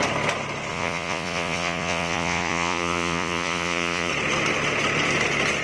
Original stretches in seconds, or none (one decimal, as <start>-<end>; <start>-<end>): 0.0-0.7; 4.1-5.6